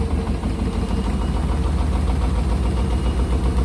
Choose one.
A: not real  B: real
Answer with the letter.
B